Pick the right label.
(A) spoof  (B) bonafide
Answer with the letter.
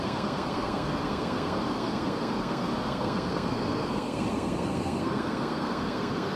A